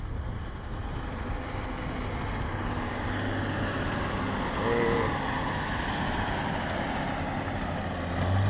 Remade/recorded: recorded